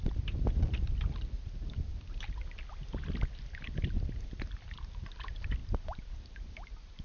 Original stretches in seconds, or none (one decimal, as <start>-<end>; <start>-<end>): 0.0-7.0